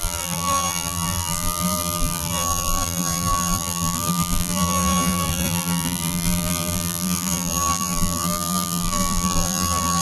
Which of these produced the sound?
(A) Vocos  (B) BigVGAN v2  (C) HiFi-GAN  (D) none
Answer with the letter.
B